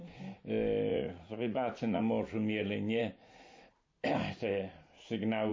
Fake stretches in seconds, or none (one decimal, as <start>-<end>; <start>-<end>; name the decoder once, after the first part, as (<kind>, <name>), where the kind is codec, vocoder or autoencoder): 0.9-2.0 (vocoder, Vocos)